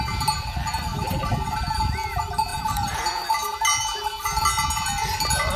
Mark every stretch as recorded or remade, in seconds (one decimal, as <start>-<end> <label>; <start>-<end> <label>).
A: 0.0-0.9 recorded; 0.9-1.6 remade; 1.6-2.5 recorded; 2.5-3.0 remade; 3.0-5.6 recorded